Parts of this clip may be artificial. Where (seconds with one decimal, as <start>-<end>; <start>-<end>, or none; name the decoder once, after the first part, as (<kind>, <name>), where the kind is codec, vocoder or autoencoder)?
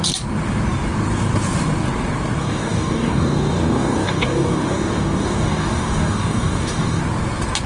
2.4-7.0 (codec, DAC)